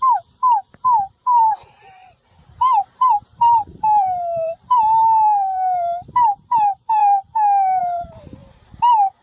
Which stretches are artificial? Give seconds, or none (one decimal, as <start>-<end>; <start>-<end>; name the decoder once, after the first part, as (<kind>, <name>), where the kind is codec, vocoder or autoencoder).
0.0-0.4 (vocoder, BigVGAN v2); 1.1-7.0; 7.8-8.4